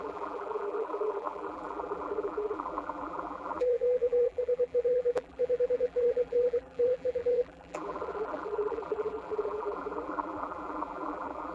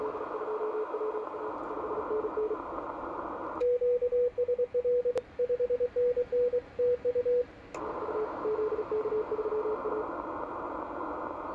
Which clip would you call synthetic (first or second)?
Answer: first